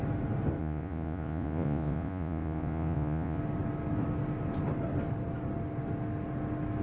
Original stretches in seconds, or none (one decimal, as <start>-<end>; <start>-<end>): 0.0-0.6; 3.4-6.8